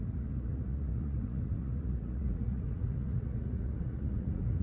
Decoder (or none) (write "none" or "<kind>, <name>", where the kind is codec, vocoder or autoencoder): vocoder, Vocos